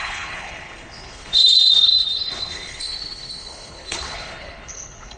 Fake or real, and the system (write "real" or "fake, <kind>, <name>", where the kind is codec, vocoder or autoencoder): fake, codec, HILCodec